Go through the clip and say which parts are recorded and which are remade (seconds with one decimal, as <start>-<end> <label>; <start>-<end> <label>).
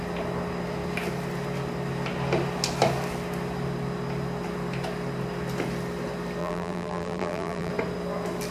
0.0-6.4 recorded; 6.4-7.7 remade; 7.7-8.5 recorded